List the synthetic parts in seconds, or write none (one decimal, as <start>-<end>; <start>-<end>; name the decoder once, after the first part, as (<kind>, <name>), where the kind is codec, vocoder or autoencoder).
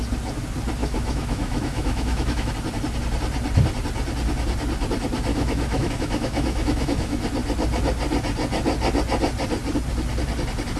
0.8-2.5 (autoencoder, DAC-VAE); 5.3-7.2